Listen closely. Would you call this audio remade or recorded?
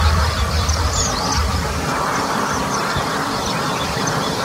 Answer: remade